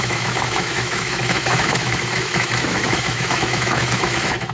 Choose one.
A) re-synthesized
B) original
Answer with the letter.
A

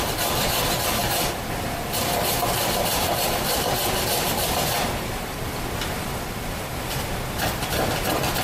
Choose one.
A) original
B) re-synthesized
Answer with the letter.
B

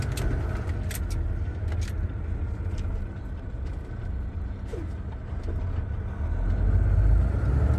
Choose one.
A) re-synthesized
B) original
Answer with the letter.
B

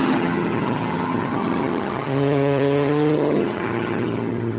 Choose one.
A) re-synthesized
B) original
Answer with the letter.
A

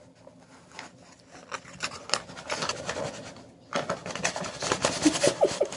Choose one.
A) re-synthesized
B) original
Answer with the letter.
A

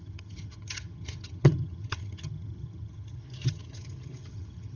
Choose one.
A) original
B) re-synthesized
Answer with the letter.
B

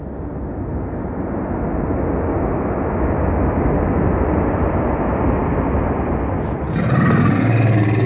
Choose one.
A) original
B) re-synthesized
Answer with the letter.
A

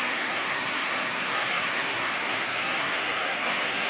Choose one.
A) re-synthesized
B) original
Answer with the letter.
A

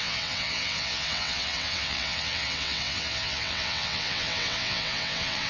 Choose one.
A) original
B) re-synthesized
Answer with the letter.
B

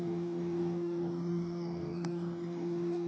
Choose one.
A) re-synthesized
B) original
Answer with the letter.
A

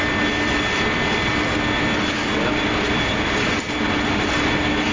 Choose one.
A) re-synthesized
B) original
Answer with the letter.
B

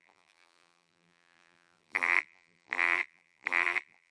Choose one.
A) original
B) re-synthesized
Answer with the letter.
B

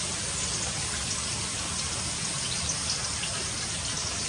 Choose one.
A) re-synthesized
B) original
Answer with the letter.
B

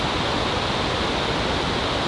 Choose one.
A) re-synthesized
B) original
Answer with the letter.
B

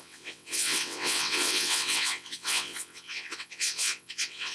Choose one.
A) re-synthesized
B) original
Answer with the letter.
A